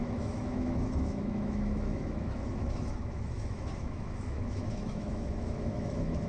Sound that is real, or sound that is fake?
fake